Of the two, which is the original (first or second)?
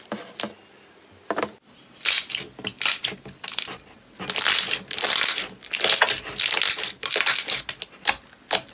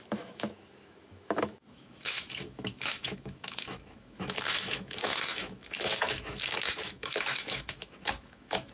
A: first